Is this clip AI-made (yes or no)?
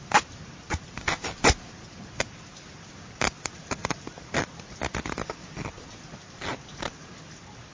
no